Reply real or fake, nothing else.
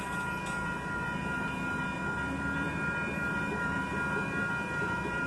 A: fake